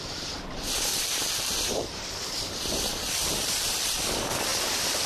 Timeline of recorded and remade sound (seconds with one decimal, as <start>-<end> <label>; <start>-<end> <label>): 0.0-0.9 recorded; 0.9-2.1 remade; 2.1-2.9 recorded; 2.9-4.0 remade; 4.0-5.1 recorded